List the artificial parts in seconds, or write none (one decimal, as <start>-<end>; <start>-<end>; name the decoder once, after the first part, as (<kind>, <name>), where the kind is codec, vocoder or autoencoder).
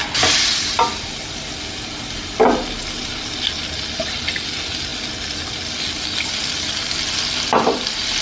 4.9-8.2 (vocoder, BigVGAN v2)